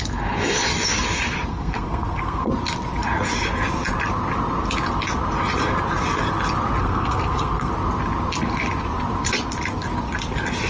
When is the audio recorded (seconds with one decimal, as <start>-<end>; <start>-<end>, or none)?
0.0-1.5; 2.5-6.8; 7.7-10.7